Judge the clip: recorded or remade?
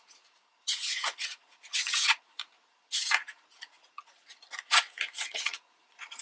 remade